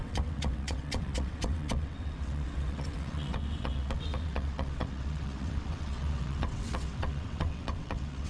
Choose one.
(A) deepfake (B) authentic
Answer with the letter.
A